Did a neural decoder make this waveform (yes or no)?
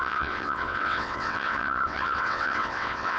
yes